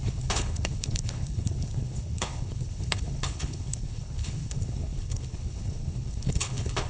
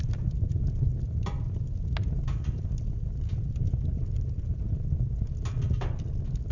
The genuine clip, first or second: second